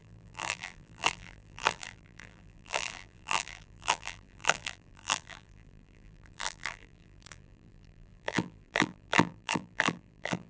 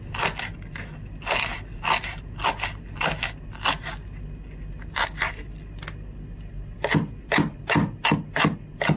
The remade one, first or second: first